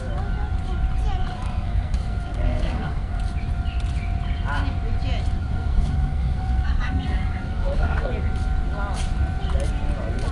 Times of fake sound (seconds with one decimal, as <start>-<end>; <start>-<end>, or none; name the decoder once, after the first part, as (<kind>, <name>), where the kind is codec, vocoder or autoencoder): 1.3-3.2 (codec, SNAC); 5.4-8.1